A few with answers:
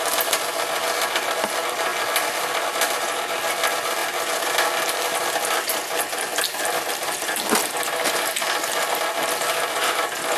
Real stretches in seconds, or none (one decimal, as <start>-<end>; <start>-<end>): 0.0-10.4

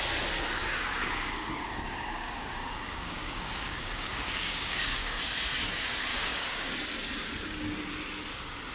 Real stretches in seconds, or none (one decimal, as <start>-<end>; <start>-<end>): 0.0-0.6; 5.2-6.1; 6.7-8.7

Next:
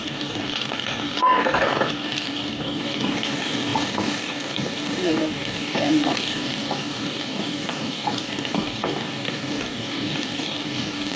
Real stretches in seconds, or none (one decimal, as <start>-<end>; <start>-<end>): none